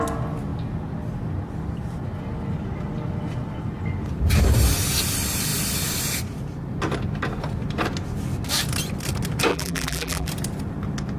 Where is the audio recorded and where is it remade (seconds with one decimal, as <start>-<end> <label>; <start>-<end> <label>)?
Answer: 0.0-9.5 recorded; 9.5-10.3 remade; 10.3-11.2 recorded